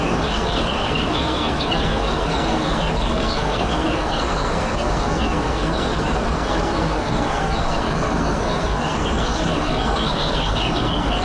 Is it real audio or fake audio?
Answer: fake